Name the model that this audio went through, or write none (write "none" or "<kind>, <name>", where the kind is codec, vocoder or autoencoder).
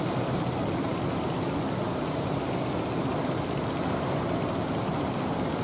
none